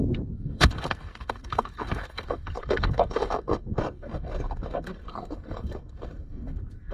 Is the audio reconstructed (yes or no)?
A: yes